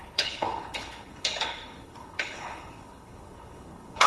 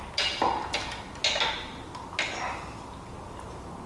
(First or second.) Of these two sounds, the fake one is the first